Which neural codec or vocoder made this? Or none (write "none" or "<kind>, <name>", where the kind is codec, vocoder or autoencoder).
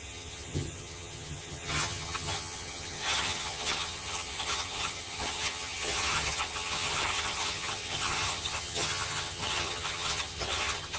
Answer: vocoder, HiFi-GAN